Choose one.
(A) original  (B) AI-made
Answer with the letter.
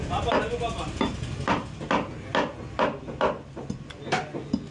A